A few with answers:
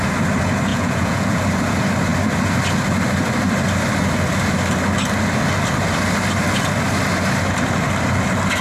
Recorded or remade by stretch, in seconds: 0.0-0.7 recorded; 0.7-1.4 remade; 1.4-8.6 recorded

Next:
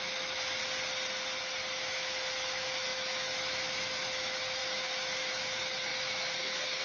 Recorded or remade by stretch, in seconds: 0.0-0.6 remade; 0.6-1.4 recorded; 1.4-6.8 remade